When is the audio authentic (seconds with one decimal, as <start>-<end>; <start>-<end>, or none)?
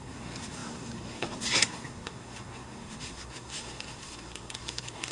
none